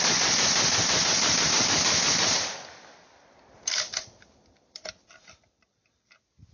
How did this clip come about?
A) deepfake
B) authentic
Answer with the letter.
A